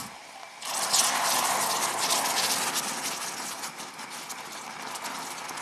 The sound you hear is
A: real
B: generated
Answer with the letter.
A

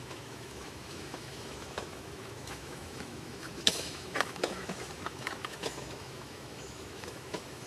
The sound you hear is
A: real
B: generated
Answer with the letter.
B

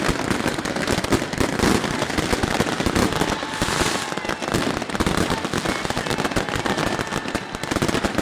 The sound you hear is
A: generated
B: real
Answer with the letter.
B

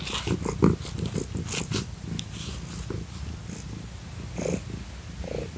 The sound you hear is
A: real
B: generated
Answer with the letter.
A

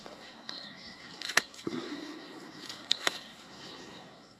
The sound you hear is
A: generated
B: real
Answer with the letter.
A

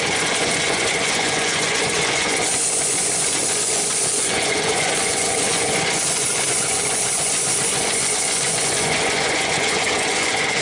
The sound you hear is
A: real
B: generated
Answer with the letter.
B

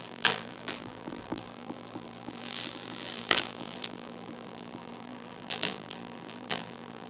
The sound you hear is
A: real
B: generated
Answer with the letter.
B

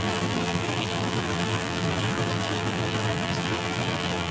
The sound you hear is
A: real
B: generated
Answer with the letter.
B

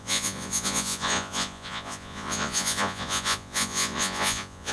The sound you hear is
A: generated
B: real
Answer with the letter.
A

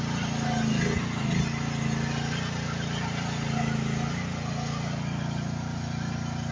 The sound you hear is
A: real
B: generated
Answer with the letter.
A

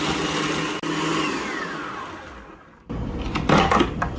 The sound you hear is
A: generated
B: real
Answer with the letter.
B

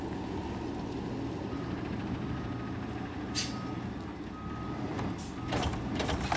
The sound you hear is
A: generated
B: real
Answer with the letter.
B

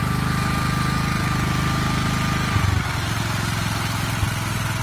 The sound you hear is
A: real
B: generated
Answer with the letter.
A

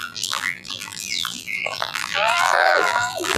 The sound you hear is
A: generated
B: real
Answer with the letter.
A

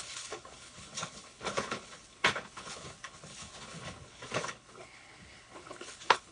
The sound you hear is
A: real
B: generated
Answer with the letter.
B